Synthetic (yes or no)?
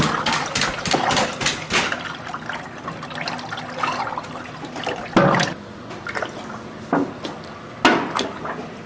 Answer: no